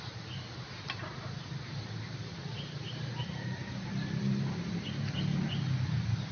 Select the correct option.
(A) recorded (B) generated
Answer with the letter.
A